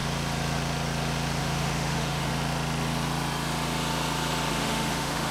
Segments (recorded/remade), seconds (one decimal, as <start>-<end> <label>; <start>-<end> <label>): 0.0-1.4 recorded; 1.4-2.3 remade; 2.3-4.5 recorded; 4.5-5.3 remade